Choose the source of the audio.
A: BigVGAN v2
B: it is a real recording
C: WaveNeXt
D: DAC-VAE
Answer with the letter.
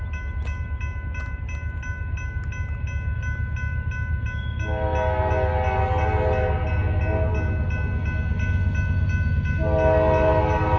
B